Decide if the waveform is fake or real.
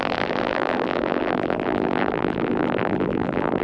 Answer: fake